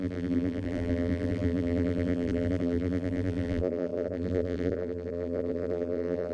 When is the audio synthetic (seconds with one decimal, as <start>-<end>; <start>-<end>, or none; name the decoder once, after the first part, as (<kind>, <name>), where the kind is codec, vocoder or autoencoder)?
0.0-6.3 (vocoder, BigVGAN v2)